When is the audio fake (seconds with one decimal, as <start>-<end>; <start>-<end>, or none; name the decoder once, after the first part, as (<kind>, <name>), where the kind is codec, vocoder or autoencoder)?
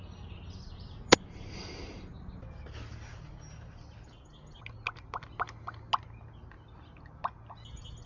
none